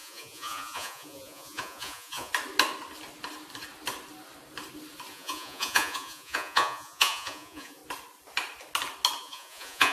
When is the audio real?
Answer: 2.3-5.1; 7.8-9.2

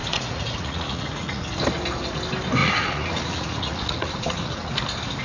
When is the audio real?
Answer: 1.5-2.6; 4.7-5.2

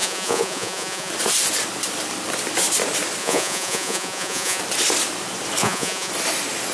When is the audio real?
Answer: 1.1-3.2; 4.6-5.6; 6.1-6.7

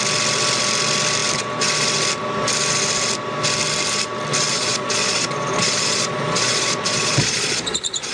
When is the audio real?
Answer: 0.0-4.5